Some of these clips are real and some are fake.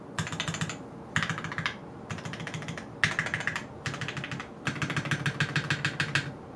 real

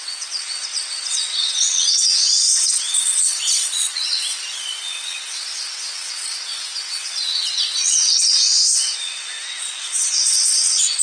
fake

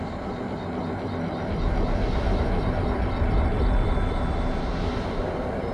real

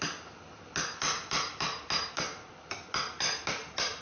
real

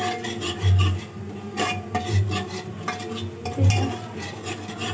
real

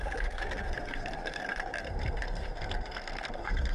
fake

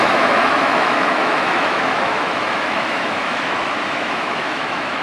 fake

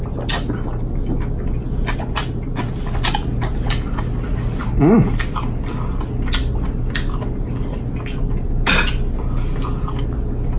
real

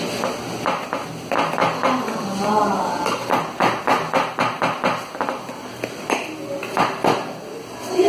real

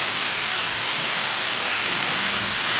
fake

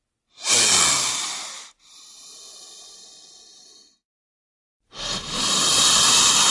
real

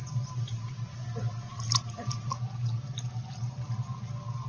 real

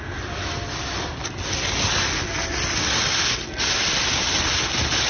real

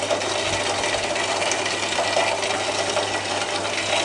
real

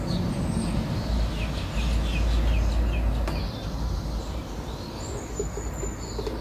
real